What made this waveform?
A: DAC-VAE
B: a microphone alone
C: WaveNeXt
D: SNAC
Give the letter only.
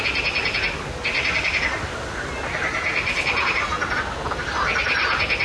B